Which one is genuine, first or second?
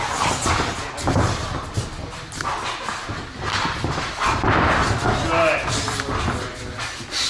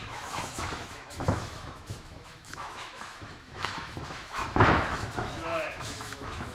first